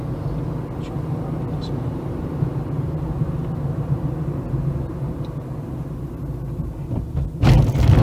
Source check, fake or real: real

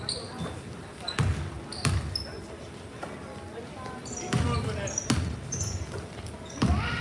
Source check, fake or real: real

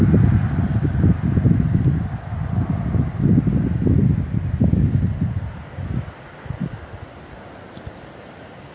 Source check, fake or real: real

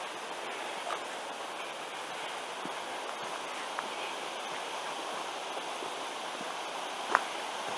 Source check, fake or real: real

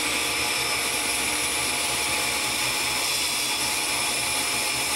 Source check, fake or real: real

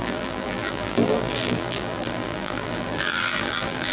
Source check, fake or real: fake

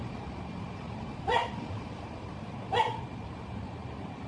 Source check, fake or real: fake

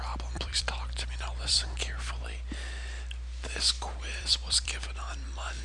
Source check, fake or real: fake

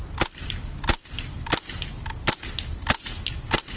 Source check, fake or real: fake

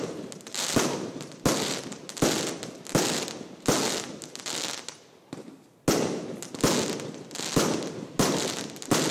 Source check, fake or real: real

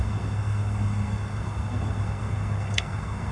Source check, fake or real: fake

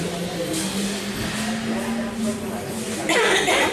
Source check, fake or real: real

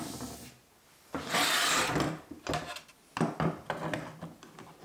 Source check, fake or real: real